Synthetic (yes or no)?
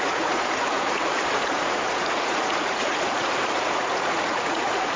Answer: yes